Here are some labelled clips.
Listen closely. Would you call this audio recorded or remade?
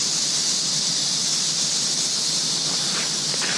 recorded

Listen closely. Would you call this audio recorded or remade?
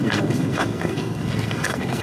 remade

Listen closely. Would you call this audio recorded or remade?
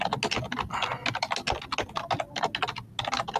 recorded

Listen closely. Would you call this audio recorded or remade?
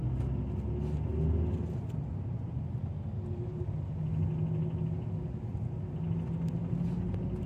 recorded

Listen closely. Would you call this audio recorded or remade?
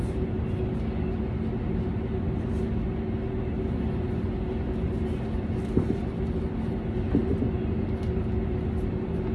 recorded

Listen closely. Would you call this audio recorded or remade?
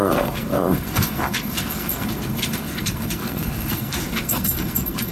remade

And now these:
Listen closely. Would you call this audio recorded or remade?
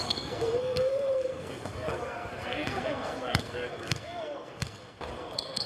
remade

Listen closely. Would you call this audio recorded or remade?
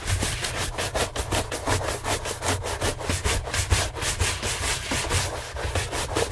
recorded